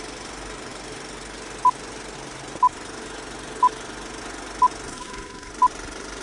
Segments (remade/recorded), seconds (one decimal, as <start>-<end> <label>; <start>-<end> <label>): 0.0-4.9 recorded; 4.9-5.5 remade; 5.5-6.2 recorded